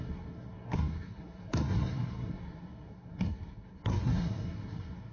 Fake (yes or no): yes